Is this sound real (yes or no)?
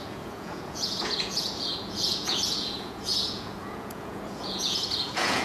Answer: no